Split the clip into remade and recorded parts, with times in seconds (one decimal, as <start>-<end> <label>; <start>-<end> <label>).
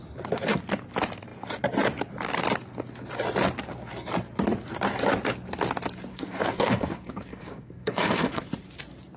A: 0.0-6.1 recorded; 6.1-8.4 remade; 8.4-9.2 recorded